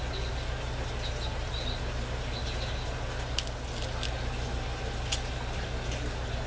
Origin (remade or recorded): recorded